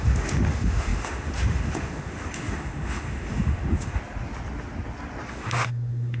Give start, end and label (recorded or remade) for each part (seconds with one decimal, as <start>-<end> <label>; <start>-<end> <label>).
0.0-4.0 remade; 4.0-5.3 recorded; 5.3-6.2 remade